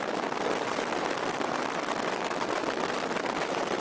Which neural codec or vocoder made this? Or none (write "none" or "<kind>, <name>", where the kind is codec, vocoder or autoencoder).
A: none